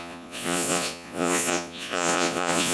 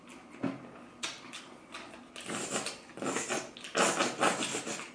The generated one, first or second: first